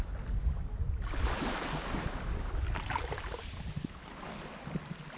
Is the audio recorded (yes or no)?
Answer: yes